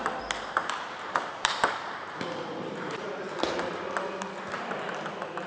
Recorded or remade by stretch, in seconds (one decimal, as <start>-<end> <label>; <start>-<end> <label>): 0.0-0.6 recorded; 0.6-3.9 remade; 3.9-5.5 recorded